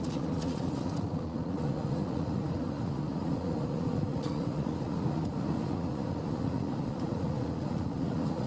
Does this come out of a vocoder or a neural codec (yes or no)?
yes